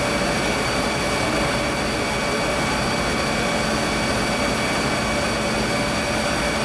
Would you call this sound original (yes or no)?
yes